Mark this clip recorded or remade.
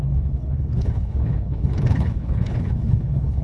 remade